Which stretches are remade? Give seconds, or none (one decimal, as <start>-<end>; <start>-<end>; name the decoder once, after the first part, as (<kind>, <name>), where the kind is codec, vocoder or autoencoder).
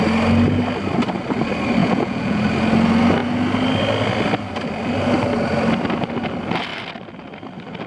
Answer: 1.8-2.4 (vocoder, Vocos)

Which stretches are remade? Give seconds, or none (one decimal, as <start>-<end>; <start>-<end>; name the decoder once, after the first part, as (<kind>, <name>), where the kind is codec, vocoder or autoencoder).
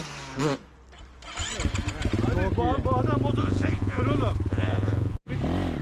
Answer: 3.4-4.0 (vocoder, Vocos); 4.5-5.3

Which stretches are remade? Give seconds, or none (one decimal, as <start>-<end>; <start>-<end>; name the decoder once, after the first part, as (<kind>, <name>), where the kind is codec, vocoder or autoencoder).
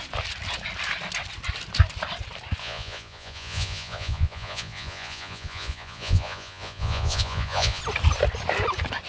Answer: 2.6-7.8 (vocoder, Vocos)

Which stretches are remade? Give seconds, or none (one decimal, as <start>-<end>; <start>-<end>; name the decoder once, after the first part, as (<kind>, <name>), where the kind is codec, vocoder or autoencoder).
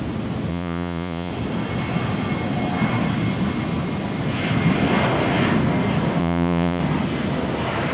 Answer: 0.5-1.3 (vocoder, Vocos); 6.2-6.8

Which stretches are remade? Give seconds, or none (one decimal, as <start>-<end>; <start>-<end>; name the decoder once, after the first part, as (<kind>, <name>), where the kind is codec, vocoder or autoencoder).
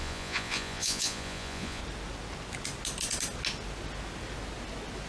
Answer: 0.0-1.8 (vocoder, Vocos)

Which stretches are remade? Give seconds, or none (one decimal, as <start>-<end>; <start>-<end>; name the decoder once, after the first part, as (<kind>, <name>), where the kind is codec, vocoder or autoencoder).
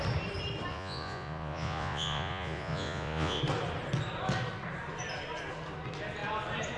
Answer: 0.7-3.4 (vocoder, Vocos)